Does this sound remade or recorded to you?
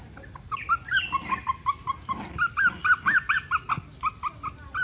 recorded